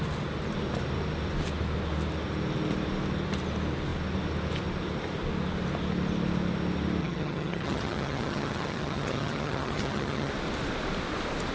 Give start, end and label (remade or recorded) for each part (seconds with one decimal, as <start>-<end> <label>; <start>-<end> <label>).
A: 0.0-7.0 recorded; 7.0-10.3 remade; 10.3-11.5 recorded